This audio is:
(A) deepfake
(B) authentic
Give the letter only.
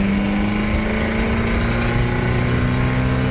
B